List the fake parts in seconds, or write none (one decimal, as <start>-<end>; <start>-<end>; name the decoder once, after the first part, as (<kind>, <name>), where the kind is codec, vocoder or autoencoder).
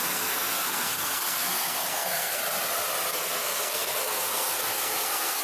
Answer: 0.0-2.4 (codec, SNAC); 3.1-5.4